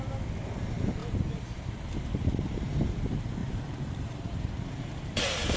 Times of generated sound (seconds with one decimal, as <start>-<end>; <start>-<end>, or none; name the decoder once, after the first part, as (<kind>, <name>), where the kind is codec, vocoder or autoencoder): 1.0-1.8 (vocoder, BigVGAN v2); 3.4-5.6